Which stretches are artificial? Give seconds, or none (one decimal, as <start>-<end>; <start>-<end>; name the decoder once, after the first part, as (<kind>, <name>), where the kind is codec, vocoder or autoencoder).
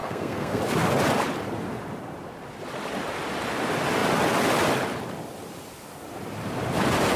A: 0.0-0.6 (codec, SNAC)